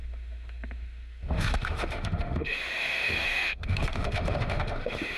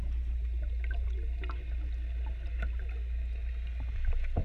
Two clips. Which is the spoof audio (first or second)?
first